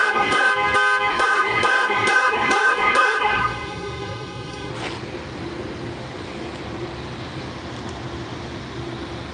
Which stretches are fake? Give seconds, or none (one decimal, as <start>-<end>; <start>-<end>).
0.0-0.5; 1.1-4.7